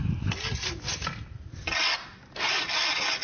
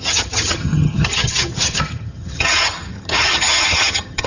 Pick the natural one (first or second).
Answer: first